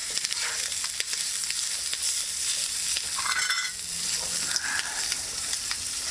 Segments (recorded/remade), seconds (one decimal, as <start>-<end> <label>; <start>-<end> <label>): 0.0-1.3 remade; 1.3-5.0 recorded; 5.0-6.1 remade